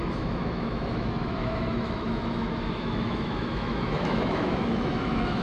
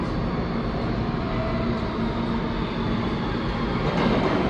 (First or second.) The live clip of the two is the second